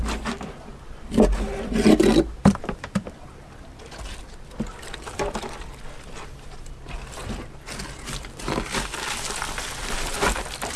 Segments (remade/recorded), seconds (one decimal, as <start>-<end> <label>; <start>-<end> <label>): 0.0-10.8 recorded